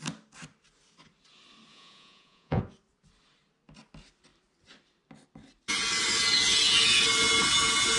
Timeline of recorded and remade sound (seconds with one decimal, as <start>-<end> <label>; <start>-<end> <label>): 0.0-1.7 recorded; 1.7-2.6 remade; 2.6-8.0 recorded

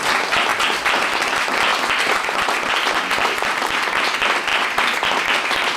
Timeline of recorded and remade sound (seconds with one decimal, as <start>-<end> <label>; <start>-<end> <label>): 0.0-5.8 recorded

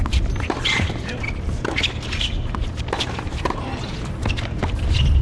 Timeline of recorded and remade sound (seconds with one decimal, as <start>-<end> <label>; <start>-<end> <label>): 0.0-2.6 recorded; 2.6-4.8 remade; 4.8-5.2 recorded

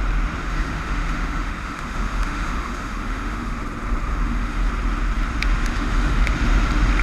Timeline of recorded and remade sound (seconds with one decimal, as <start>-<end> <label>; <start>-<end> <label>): 0.0-0.4 recorded; 0.4-3.6 remade; 3.6-4.1 recorded; 4.1-4.7 remade; 4.7-5.7 recorded; 5.7-6.3 remade; 6.3-7.0 recorded

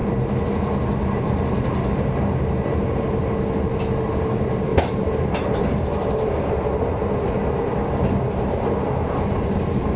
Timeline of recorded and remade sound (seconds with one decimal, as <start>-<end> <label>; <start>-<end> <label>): 0.0-10.0 recorded

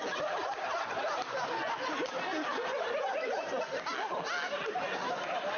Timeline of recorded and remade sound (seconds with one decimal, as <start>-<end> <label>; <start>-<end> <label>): 0.0-2.3 remade; 2.3-4.7 recorded; 4.7-5.6 remade

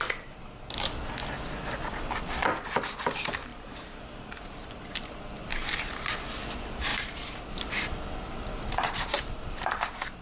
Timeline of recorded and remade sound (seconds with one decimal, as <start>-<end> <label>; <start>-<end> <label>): 0.0-3.5 recorded; 3.5-6.0 remade; 6.0-6.9 recorded; 6.9-9.4 remade; 9.4-10.2 recorded